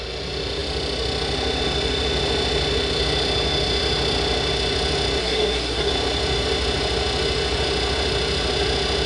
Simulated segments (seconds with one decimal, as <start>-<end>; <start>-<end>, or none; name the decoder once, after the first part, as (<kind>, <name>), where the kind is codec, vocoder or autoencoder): 5.2-5.9 (codec, SNAC)